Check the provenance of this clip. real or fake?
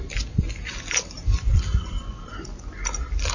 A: real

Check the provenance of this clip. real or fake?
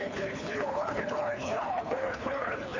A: fake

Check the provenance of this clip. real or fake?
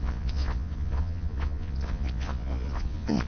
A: fake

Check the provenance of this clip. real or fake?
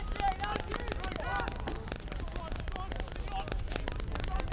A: real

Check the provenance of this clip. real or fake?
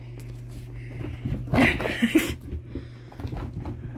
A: real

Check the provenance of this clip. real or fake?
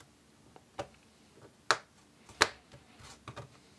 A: real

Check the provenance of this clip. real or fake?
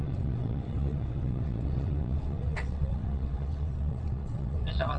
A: fake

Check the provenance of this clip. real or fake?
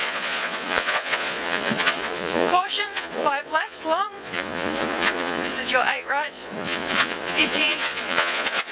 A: fake